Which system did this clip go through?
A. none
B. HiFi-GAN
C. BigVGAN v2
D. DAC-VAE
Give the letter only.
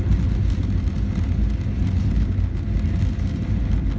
A